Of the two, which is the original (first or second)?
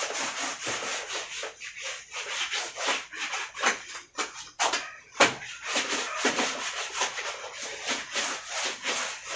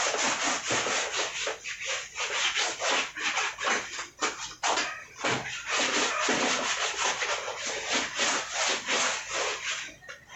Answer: second